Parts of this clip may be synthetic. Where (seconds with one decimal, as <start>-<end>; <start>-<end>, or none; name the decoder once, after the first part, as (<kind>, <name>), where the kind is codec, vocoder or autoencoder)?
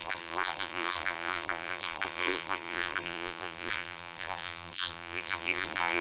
0.0-6.0 (vocoder, BigVGAN v2)